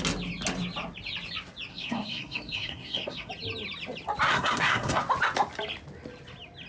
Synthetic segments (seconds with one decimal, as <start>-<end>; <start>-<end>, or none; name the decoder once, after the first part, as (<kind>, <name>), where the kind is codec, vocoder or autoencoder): 1.7-3.3 (codec, SNAC); 4.3-5.0